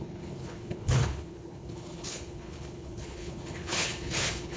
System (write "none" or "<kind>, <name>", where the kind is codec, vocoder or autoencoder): codec, HILCodec